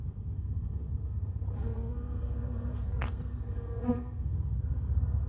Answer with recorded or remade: remade